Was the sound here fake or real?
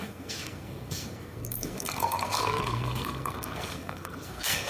fake